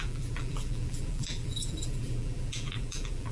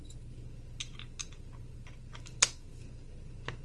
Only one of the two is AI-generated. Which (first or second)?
first